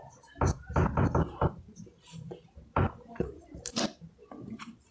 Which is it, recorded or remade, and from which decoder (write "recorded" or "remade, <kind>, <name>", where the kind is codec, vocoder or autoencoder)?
remade, vocoder, BigVGAN v2